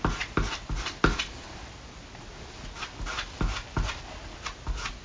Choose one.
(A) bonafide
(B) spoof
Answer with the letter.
A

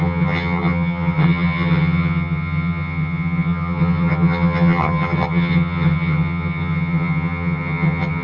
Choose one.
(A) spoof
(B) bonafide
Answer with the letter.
A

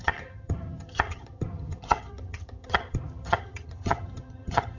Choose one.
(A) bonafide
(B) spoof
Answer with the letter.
B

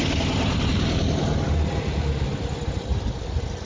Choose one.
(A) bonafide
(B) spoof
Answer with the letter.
A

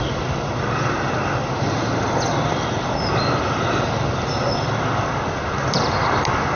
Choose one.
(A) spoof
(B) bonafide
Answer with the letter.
B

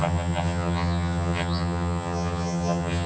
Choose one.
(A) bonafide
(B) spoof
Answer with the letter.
B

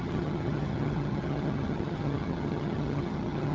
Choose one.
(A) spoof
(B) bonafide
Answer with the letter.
A